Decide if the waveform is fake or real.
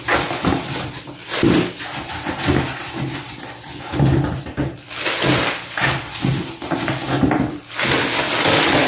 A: real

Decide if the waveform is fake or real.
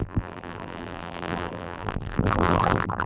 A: fake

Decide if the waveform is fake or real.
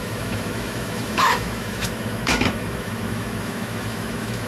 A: fake